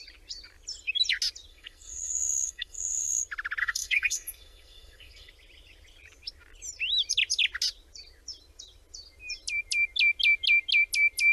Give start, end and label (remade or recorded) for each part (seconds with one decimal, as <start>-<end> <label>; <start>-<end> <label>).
0.0-1.5 recorded; 1.5-3.2 remade; 3.2-3.6 recorded; 3.6-5.3 remade; 5.3-11.3 recorded